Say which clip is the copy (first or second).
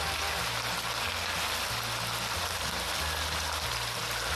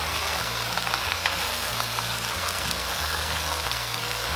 second